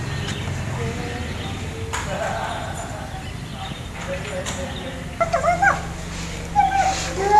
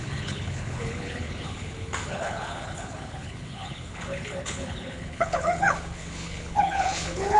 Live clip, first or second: first